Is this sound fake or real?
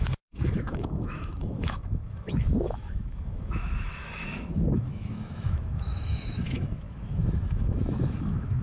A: fake